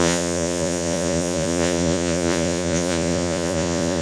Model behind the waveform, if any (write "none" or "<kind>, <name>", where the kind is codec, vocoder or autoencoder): vocoder, Vocos